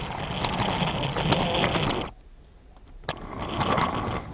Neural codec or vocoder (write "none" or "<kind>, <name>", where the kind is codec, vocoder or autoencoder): none